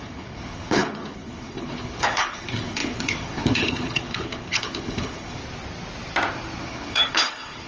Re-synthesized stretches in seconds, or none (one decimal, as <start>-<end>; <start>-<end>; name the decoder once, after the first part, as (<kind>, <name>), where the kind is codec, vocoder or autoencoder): 0.0-5.4 (codec, HILCodec); 6.6-7.7